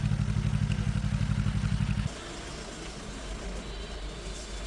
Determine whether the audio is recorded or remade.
recorded